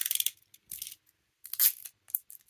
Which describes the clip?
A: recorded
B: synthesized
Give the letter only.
A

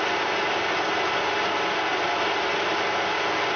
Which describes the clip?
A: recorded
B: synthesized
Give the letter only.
A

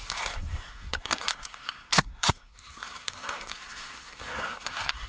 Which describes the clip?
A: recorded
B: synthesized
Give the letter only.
B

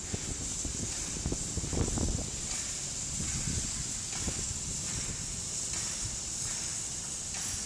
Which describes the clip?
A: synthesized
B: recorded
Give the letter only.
B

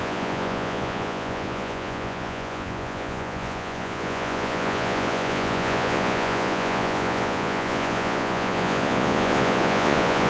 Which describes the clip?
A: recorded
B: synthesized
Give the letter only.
B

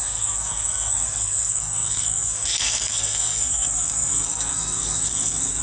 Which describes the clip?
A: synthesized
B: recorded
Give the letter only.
A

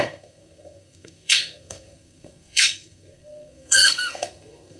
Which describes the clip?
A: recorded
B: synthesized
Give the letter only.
B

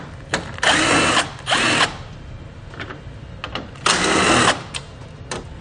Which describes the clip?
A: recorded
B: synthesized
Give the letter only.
A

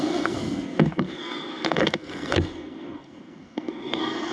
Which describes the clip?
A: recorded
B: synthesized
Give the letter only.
B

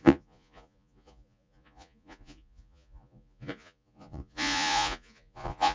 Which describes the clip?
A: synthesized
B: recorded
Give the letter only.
A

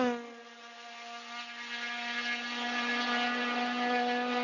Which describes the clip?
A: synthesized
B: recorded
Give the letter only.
B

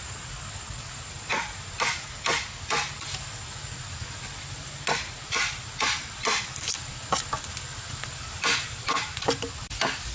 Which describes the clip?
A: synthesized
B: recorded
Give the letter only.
B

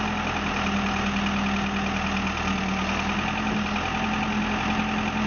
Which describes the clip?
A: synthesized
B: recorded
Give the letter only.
B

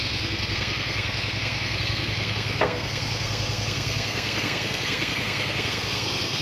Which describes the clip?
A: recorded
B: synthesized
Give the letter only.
B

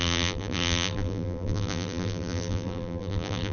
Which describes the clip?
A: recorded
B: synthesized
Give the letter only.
B